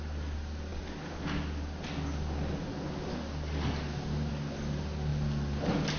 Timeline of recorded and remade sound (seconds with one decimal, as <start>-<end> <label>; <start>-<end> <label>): 0.0-6.0 recorded